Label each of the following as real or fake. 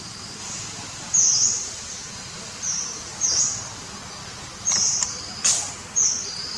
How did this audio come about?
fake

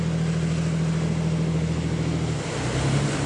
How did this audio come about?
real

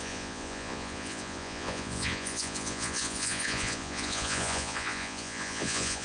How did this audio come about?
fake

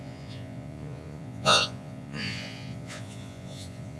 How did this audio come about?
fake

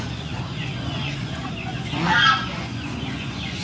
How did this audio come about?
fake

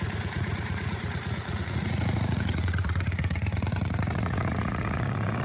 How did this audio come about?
fake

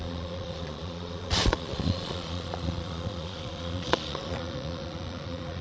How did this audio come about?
fake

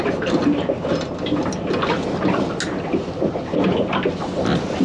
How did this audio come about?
real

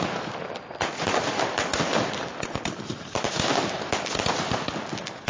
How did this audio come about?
real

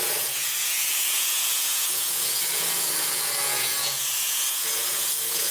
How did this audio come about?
fake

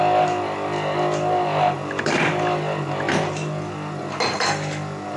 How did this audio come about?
real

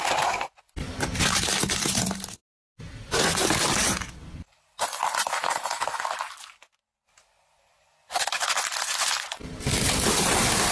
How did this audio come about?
real